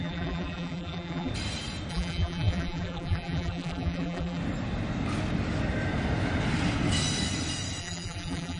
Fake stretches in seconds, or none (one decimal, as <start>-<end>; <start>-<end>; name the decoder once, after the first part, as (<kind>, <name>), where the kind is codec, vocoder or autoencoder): 0.0-1.3 (vocoder, BigVGAN v2); 1.9-4.4; 7.8-8.6